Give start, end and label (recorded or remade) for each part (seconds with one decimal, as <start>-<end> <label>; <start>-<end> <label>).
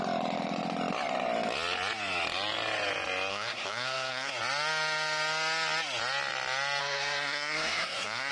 0.0-3.3 recorded; 3.3-4.3 remade; 4.3-6.8 recorded; 6.8-8.3 remade